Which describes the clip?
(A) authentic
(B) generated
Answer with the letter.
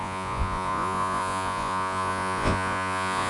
B